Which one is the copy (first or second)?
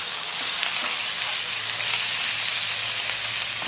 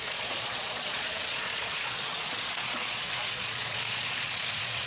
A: second